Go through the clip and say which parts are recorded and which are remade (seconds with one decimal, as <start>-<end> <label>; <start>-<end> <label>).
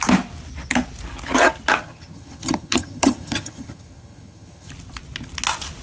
0.0-1.8 recorded; 1.8-4.7 remade; 4.7-5.8 recorded